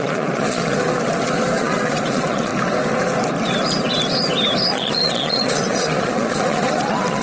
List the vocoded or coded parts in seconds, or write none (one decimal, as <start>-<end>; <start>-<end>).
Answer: 0.0-0.9; 1.6-2.5; 4.7-7.2